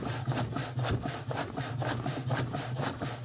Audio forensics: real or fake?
real